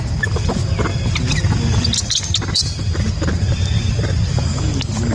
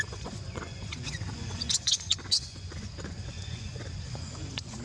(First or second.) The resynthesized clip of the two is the second